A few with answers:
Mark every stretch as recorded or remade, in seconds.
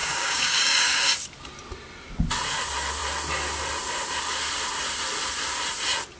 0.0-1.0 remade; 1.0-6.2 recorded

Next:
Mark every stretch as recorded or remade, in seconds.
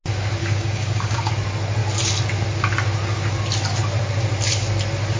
0.0-0.4 recorded; 0.4-1.3 remade; 1.3-5.2 recorded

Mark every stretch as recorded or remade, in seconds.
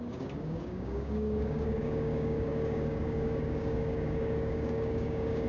0.0-5.5 remade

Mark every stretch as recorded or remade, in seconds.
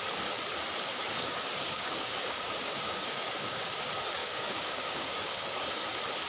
0.0-0.9 recorded; 0.9-3.8 remade; 3.8-4.2 recorded; 4.2-5.8 remade; 5.8-6.3 recorded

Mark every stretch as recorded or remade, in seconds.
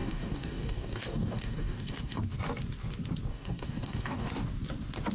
0.0-2.2 remade; 2.2-3.3 recorded; 3.3-4.3 remade; 4.3-5.1 recorded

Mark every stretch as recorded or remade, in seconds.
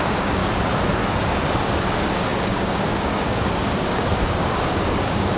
0.0-0.4 remade; 0.4-1.5 recorded; 1.5-5.4 remade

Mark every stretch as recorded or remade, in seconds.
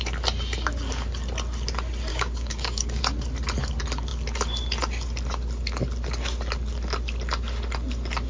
0.0-2.1 recorded; 2.1-3.0 remade; 3.0-8.3 recorded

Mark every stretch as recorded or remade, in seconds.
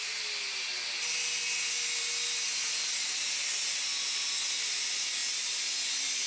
0.0-6.3 recorded